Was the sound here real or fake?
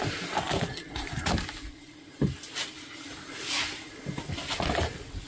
real